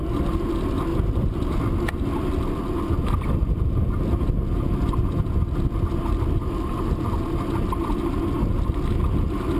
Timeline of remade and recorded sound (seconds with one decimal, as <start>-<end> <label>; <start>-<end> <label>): 0.0-0.9 recorded; 0.9-1.6 remade; 1.6-9.6 recorded